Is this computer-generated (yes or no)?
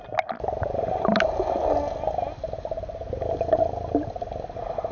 no